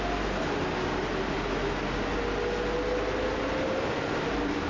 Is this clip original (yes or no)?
yes